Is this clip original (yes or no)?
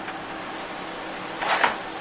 yes